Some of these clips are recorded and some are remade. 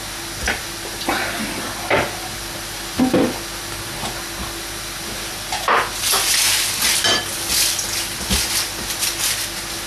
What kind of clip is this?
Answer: recorded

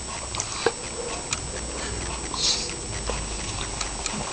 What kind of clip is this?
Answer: recorded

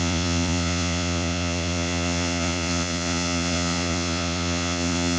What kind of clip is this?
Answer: remade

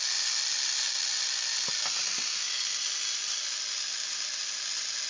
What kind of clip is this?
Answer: recorded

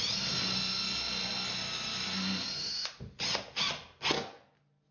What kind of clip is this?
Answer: recorded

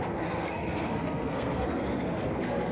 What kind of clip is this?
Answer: remade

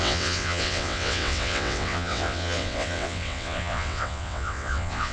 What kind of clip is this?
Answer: remade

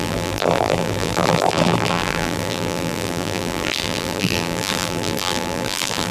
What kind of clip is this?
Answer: remade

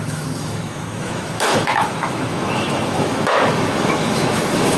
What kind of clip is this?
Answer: remade